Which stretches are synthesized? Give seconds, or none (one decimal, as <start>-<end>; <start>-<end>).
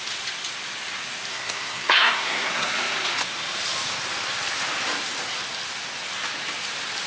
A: 1.3-2.7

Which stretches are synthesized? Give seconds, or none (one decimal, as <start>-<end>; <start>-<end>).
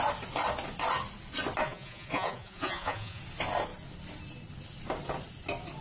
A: 1.6-3.2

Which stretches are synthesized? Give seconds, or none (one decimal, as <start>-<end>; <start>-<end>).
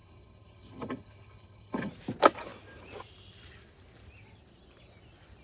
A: 0.0-1.9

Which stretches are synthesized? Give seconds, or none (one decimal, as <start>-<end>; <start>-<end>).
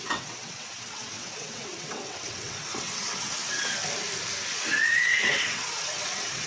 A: 0.0-3.8; 4.5-6.5